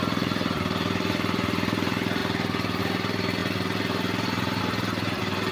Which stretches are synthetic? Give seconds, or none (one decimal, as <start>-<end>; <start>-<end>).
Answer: 0.0-2.2; 2.8-5.5